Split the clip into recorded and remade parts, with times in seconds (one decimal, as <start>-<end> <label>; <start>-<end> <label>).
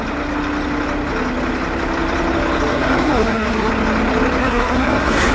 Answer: 0.0-2.7 recorded; 2.7-3.7 remade; 3.7-4.4 recorded; 4.4-5.3 remade